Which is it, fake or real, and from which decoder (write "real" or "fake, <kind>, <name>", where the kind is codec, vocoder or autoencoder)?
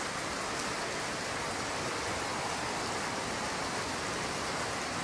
real